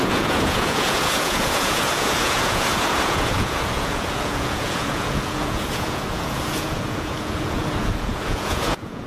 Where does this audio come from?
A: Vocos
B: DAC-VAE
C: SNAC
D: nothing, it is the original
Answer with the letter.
A